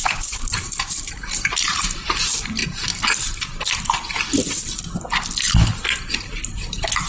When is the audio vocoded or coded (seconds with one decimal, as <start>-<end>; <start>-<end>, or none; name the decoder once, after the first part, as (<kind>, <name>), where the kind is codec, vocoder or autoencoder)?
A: 0.0-2.6 (vocoder, BigVGAN v2); 6.3-7.1